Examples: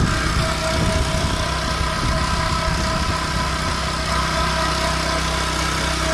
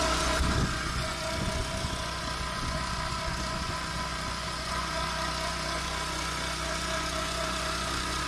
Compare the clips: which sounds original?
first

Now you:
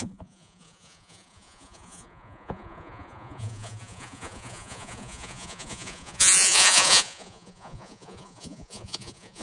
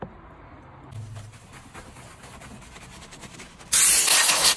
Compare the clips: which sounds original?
second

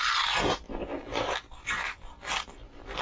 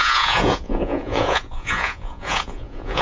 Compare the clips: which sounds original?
first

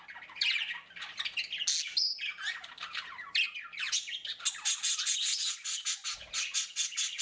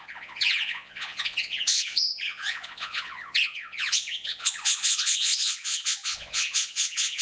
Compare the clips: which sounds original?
first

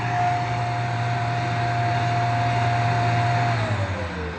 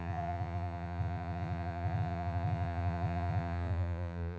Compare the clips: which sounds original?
first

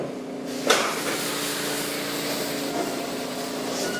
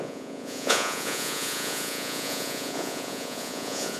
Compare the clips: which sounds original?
first